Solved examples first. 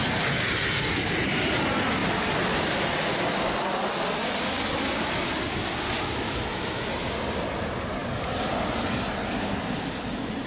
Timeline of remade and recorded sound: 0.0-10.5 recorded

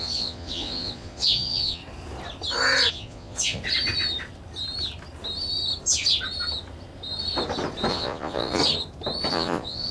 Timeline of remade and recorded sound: 0.0-1.8 remade; 1.8-2.9 recorded; 2.9-3.6 remade; 3.6-7.9 recorded; 7.9-8.6 remade; 8.6-9.3 recorded; 9.3-9.9 remade